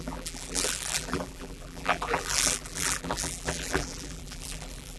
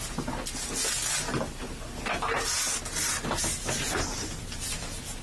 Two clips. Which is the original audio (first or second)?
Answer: second